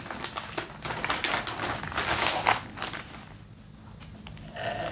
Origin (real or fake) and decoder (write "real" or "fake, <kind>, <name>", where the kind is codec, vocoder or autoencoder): real